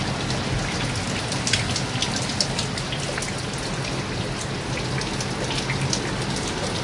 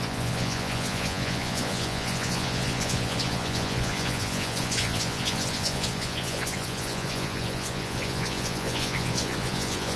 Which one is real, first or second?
first